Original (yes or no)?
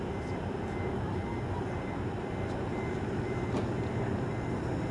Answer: yes